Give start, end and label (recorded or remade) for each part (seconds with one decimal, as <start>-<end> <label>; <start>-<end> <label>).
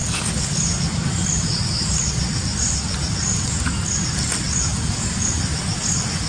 0.0-4.7 recorded; 4.7-5.3 remade; 5.3-6.3 recorded